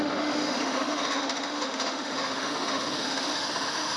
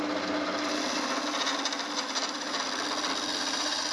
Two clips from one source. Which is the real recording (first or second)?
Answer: second